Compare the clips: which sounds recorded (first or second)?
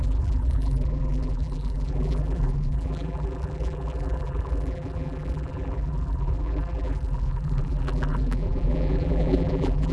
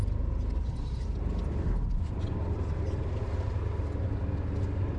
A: second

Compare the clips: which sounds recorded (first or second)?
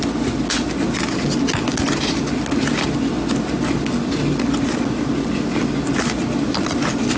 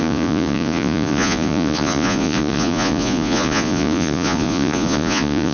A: first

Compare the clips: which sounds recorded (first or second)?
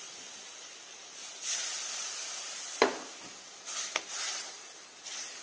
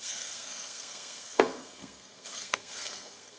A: first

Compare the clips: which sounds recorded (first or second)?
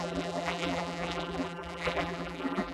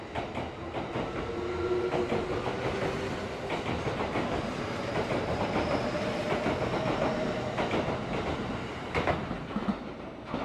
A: second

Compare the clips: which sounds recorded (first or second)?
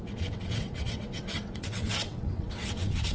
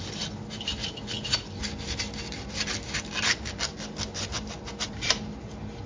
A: second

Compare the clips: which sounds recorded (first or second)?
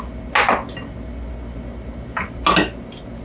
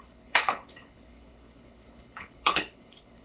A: first